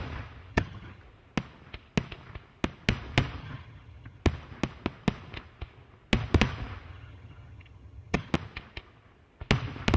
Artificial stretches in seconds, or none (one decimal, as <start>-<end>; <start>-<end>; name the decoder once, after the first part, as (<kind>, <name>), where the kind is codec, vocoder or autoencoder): 0.5-1.0 (vocoder, HiFi-GAN); 3.4-4.2; 6.9-8.3